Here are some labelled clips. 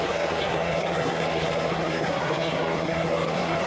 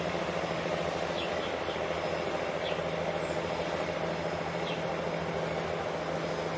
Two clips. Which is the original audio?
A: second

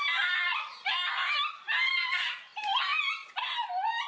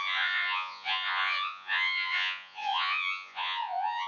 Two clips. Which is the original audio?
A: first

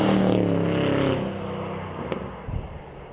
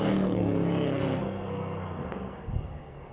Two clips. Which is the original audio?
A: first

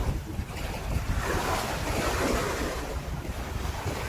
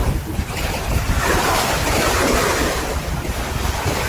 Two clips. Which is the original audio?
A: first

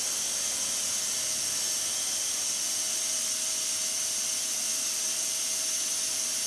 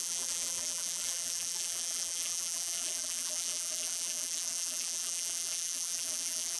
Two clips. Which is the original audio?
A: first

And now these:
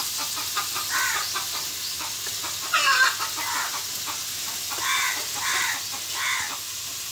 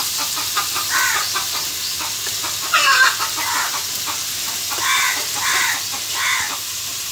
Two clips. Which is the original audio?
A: first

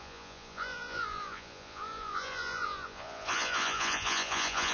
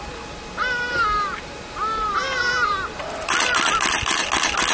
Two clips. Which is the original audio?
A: second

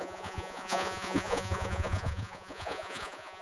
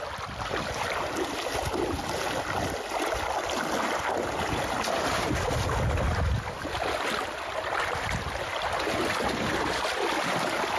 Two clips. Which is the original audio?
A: second